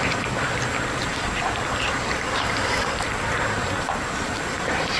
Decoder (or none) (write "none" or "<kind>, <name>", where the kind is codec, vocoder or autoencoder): vocoder, BigVGAN v2